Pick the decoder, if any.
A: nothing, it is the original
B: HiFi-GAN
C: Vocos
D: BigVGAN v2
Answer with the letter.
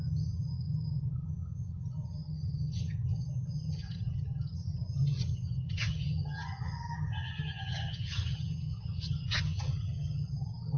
B